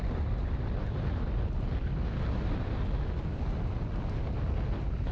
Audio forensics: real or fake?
real